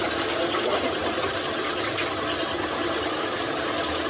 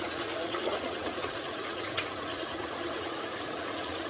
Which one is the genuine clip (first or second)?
first